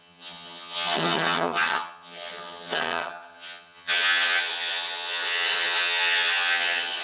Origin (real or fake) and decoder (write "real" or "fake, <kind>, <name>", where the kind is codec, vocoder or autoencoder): fake, vocoder, HiFi-GAN